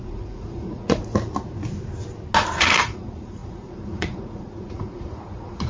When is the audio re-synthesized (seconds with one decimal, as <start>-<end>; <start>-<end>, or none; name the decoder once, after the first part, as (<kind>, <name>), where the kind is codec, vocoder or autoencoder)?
0.0-1.0 (vocoder, Vocos); 2.8-5.7